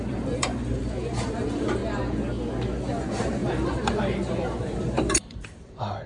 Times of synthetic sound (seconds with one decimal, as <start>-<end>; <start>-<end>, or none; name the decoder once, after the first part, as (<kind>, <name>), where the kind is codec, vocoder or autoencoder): 0.0-1.8 (vocoder, BigVGAN v2); 3.0-6.1